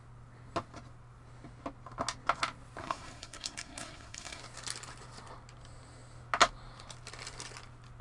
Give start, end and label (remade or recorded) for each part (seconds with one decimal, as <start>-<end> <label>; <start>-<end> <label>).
0.0-2.8 recorded; 2.8-4.4 remade; 4.4-8.0 recorded